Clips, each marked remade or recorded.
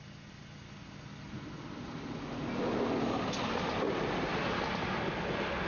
recorded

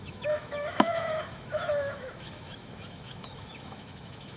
remade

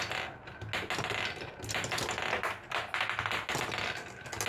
recorded